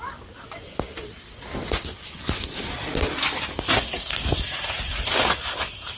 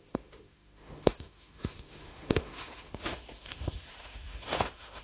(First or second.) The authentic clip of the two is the first